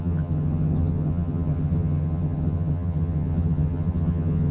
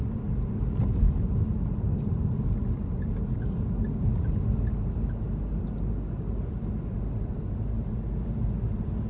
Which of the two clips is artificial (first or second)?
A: first